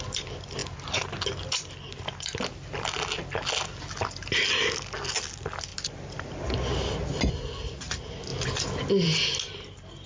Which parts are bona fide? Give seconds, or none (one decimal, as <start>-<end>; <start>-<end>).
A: 0.0-10.1